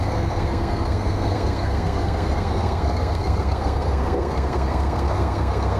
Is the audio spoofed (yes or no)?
yes